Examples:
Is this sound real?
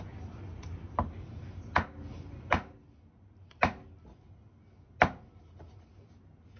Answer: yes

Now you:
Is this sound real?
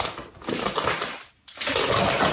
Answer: yes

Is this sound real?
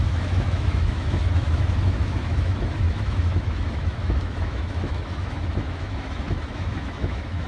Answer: no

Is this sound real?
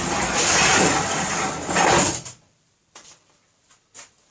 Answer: no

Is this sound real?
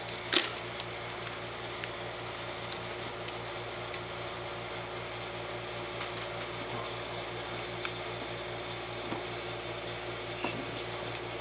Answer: yes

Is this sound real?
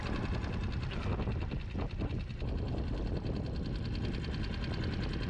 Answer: yes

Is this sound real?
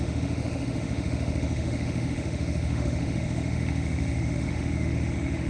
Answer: no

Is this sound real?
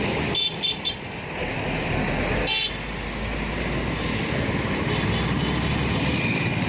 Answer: yes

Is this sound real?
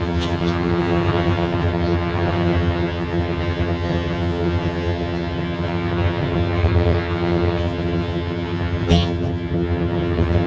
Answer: no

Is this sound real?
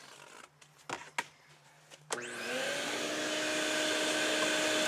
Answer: yes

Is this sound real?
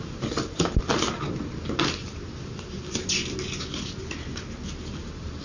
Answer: yes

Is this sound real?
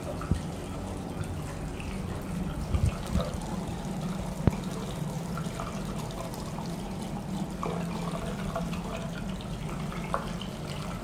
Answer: yes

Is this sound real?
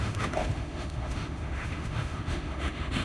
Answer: no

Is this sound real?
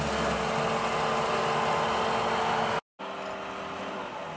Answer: yes